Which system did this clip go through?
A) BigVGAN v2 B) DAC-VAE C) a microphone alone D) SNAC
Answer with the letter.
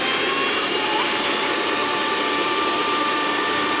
A